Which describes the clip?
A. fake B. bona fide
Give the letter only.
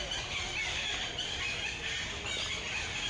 B